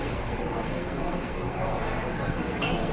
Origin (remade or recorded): remade